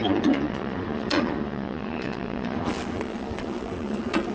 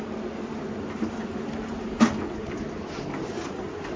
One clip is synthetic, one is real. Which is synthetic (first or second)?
first